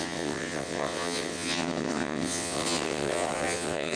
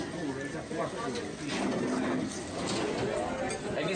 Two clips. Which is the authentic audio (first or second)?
second